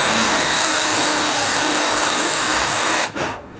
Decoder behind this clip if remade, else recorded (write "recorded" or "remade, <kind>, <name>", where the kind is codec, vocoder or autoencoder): remade, codec, DAC